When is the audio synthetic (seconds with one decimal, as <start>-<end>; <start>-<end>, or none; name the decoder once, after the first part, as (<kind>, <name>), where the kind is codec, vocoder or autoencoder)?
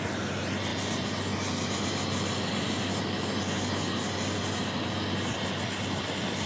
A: none